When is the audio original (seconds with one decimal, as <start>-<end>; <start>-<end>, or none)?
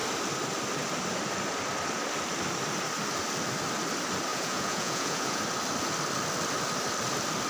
0.0-4.3; 5.4-7.5